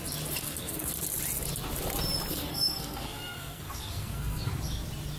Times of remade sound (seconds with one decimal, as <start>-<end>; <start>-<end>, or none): 0.4-0.9; 2.3-4.5